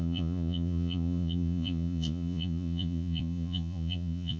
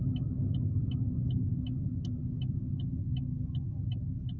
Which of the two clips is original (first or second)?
second